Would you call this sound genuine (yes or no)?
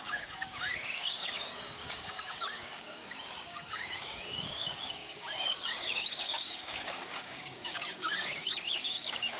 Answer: no